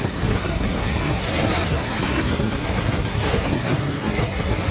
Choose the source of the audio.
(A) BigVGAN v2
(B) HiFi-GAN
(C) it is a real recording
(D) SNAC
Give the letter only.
D